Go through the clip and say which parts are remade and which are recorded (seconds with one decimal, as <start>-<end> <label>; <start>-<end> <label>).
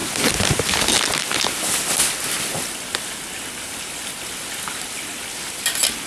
0.0-6.1 recorded